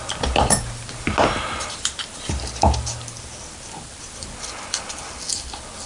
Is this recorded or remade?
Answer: recorded